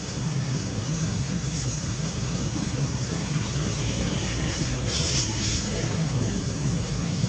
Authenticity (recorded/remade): remade